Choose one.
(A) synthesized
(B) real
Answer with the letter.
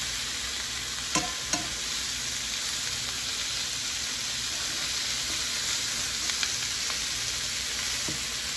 B